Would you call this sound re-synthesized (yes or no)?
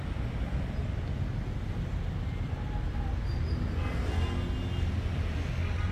no